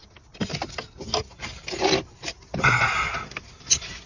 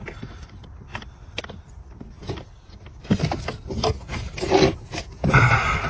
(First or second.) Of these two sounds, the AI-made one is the second